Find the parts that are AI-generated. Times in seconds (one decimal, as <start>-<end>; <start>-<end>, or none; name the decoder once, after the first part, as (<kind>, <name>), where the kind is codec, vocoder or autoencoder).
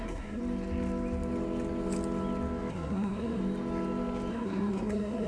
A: 0.0-0.4 (codec, SNAC); 2.7-3.4; 4.3-5.3